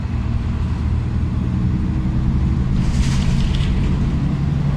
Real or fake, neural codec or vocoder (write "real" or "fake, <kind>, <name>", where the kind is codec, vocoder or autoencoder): real